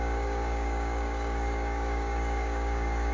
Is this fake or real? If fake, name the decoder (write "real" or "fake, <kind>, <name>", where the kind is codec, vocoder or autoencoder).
fake, codec, DAC